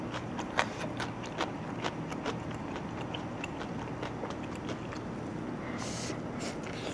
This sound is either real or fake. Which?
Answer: real